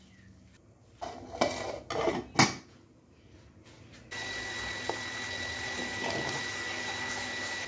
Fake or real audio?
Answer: real